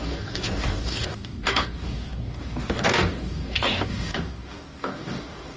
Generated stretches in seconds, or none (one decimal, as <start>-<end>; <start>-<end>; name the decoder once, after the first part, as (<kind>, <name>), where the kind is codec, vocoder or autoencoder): 0.0-5.6 (codec, DAC)